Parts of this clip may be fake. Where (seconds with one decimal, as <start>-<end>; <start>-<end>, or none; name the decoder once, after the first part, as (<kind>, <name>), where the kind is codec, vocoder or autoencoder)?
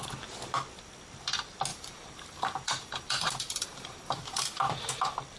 1.7-4.9 (vocoder, BigVGAN v2)